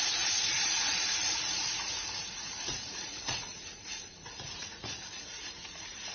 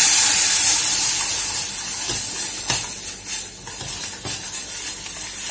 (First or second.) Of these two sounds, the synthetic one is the first